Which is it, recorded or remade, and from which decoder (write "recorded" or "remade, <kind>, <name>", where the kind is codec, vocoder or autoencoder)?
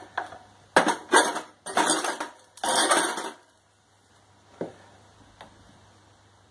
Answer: recorded